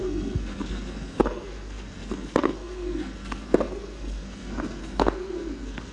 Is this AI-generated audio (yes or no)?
yes